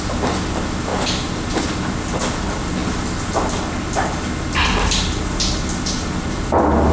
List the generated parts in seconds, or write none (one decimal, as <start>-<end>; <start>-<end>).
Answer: none

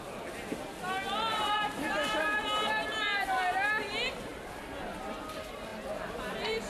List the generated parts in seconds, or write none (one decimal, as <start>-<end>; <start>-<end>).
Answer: 1.3-3.7